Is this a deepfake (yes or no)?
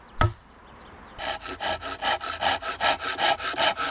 no